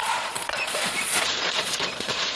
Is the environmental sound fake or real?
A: fake